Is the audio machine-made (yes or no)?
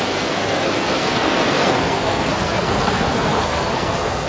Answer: yes